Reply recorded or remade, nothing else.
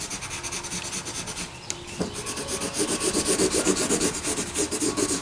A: recorded